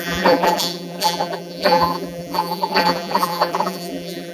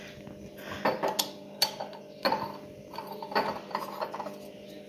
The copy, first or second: first